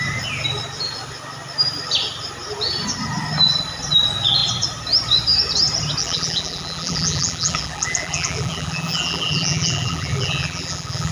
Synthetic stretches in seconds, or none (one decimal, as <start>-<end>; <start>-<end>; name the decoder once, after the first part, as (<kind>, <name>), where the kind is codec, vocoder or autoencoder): 6.0-11.1 (vocoder, BigVGAN v2)